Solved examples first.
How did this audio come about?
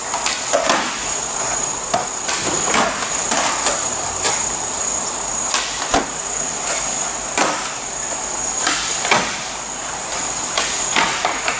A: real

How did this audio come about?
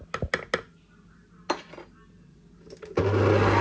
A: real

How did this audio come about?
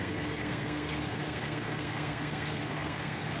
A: fake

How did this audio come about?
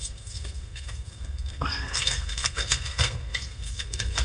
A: fake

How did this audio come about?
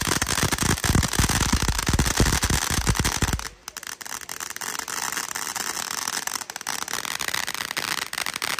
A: real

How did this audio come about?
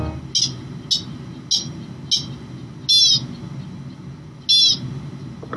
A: real